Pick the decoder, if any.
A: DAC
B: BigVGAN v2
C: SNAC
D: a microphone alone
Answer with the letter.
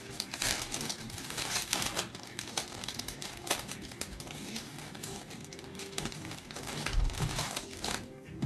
A